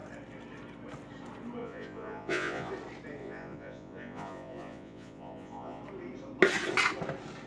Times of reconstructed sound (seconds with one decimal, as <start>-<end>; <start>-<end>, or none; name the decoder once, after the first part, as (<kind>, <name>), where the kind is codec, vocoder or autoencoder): 1.6-2.7 (vocoder, Vocos); 3.2-5.8